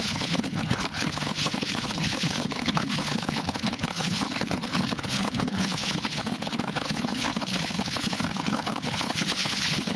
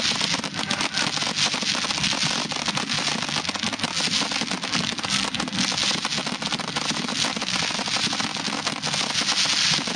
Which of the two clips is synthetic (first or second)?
first